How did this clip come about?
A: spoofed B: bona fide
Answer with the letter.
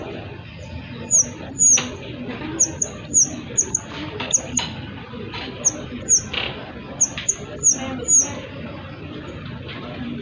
B